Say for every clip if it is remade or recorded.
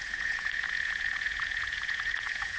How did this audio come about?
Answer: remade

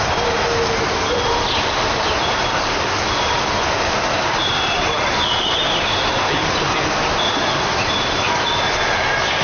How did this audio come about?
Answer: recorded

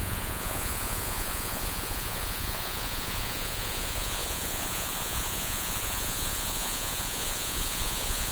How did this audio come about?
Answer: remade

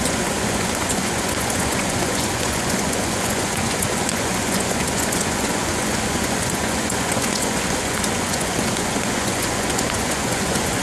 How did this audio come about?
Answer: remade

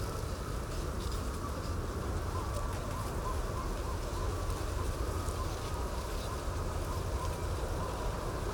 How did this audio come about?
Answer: recorded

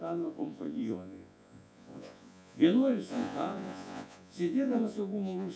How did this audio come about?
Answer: remade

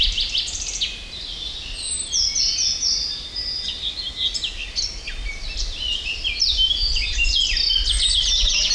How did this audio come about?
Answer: recorded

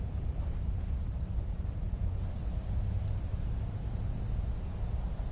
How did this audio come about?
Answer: recorded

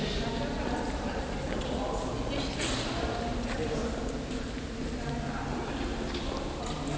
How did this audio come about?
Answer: recorded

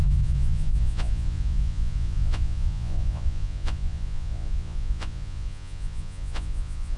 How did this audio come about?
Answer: remade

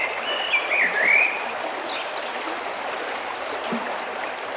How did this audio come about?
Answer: recorded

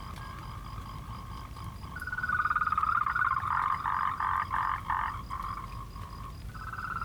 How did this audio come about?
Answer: recorded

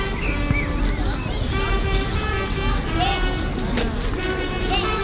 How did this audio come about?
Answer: recorded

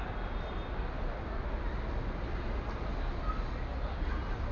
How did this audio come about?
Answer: recorded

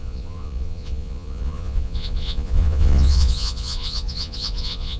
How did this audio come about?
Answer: remade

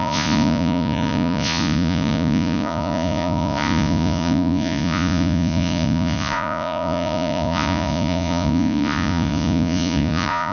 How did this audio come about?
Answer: remade